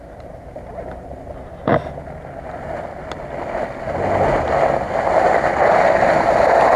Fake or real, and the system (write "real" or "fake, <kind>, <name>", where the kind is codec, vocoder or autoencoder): real